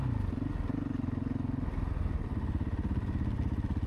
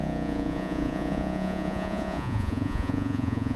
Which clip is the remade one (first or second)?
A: second